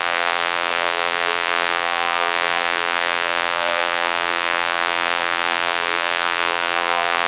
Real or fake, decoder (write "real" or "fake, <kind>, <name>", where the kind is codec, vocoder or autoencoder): fake, vocoder, BigVGAN v2